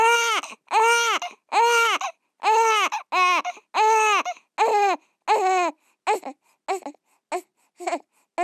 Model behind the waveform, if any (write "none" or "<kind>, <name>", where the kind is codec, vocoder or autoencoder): none